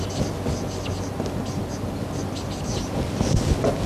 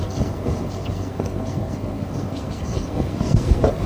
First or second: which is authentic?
first